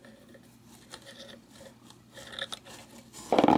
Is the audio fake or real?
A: real